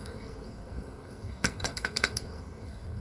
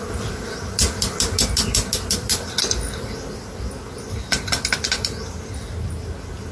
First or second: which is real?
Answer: second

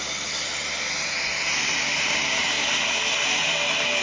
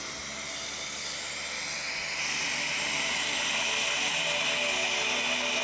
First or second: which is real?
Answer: second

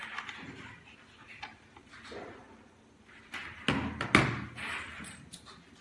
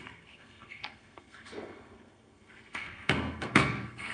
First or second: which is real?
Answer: first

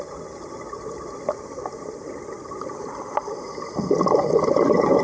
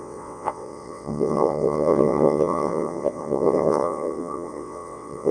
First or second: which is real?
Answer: first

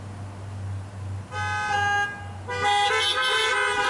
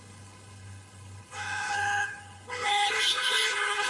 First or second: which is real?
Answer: first